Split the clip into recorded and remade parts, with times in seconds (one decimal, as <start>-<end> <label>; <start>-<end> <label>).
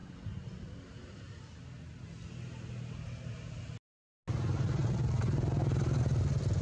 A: 0.0-1.6 remade; 1.6-6.6 recorded